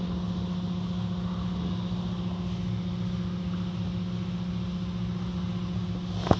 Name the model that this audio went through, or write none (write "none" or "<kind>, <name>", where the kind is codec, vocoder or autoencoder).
none